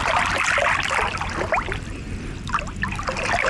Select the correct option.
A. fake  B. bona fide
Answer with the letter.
B